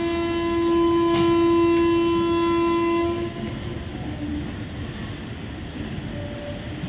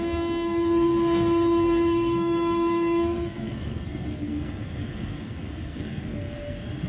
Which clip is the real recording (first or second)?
first